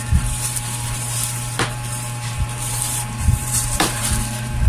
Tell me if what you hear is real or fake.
fake